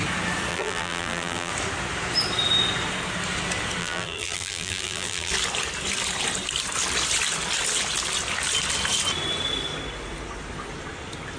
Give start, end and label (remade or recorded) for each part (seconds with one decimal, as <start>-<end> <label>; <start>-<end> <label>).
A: 0.0-0.5 recorded; 0.5-1.5 remade; 1.5-3.8 recorded; 3.8-5.3 remade; 5.3-11.4 recorded